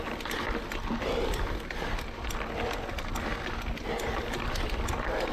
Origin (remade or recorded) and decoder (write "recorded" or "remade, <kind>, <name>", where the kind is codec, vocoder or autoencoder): recorded